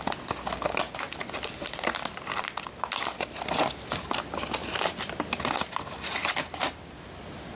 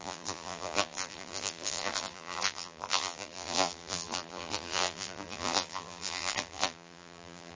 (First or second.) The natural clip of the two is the first